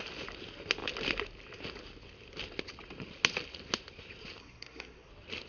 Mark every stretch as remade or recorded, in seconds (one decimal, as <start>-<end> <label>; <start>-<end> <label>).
0.0-4.4 recorded; 4.4-5.1 remade; 5.1-5.5 recorded